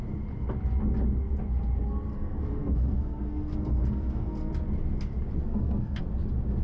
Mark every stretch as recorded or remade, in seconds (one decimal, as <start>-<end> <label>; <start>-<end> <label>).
0.0-2.1 recorded; 2.1-4.5 remade; 4.5-5.5 recorded; 5.5-6.0 remade; 6.0-6.6 recorded